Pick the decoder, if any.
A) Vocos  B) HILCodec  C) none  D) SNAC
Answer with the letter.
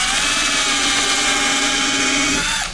A